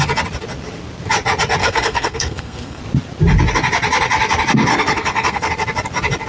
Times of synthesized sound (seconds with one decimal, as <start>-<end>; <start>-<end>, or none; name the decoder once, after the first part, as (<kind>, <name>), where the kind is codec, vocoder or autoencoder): 1.6-2.8 (codec, SNAC); 4.7-5.5